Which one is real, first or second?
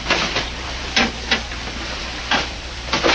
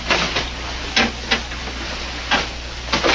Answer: second